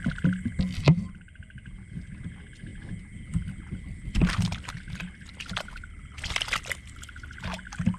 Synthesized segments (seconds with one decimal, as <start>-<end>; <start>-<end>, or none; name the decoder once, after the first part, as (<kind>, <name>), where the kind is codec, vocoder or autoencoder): none